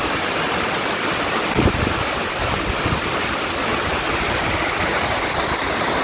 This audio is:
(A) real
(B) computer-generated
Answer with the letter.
A